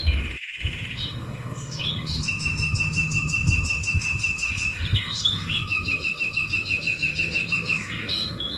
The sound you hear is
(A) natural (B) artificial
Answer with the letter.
B